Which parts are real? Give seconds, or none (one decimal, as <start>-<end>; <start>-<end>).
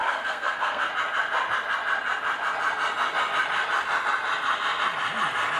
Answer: 0.9-5.6